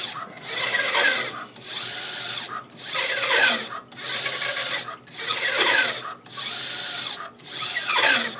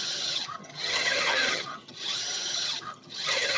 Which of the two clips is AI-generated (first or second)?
second